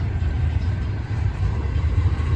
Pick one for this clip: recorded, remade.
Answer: remade